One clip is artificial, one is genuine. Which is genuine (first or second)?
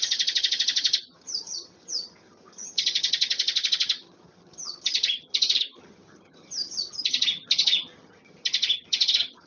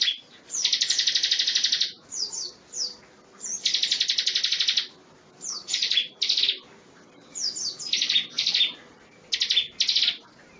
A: second